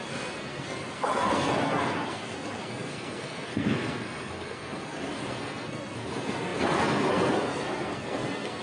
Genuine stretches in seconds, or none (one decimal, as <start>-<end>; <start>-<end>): none